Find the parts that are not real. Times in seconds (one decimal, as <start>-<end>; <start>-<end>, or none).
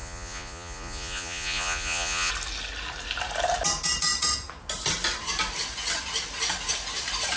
0.0-2.3